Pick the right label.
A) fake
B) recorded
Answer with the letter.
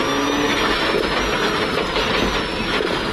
B